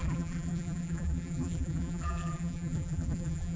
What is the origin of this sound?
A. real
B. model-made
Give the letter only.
B